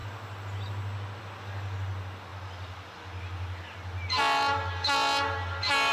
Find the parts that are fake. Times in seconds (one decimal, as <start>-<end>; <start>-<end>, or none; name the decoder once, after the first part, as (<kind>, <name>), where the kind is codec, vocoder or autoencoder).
none